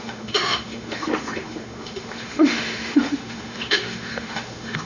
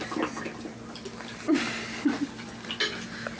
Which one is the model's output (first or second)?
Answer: first